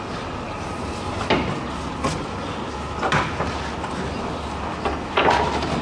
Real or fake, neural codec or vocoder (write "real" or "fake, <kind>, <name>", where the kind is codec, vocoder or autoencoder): real